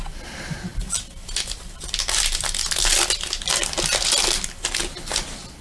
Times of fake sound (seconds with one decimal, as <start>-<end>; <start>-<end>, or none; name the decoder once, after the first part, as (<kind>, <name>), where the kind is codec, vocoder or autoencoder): none